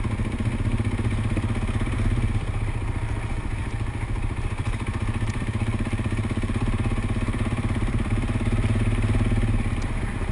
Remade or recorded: remade